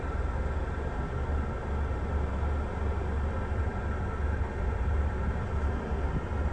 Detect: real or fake real